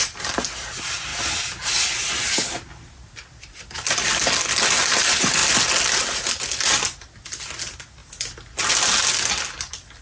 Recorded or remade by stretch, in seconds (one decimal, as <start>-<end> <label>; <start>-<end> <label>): 0.0-10.0 recorded

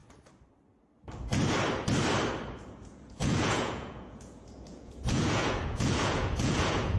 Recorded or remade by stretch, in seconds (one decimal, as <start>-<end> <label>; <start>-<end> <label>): 0.0-2.6 recorded; 2.6-7.0 remade

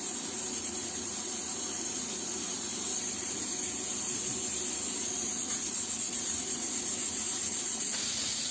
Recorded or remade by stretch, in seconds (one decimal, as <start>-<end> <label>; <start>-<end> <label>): 0.0-2.7 remade; 2.7-5.0 recorded; 5.0-8.5 remade

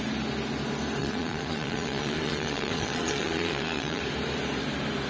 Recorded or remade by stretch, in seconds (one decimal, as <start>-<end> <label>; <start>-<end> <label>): 0.0-1.0 recorded; 1.0-4.0 remade; 4.0-5.1 recorded

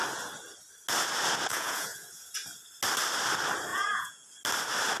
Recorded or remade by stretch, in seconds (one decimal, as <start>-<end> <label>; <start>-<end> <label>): 0.0-1.5 recorded; 1.5-2.3 remade; 2.3-3.7 recorded; 3.7-4.3 remade; 4.3-5.0 recorded

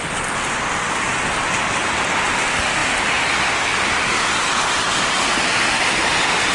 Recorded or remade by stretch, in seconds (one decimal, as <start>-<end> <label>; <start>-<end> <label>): 0.0-6.5 recorded

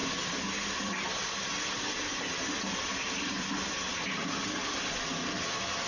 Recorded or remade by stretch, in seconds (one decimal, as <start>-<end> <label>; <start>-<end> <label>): 0.0-5.9 recorded